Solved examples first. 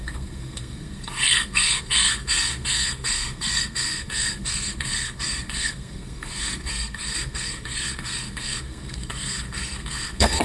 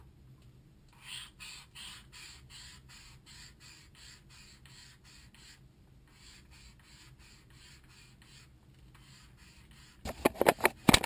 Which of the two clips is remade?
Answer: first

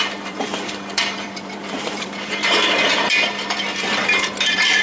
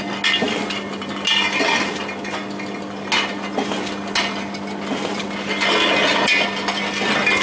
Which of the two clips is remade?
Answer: first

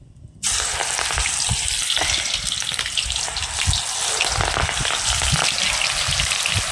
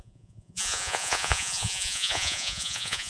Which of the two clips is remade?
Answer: second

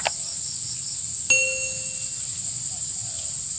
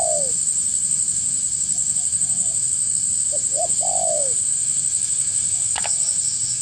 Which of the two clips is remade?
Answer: second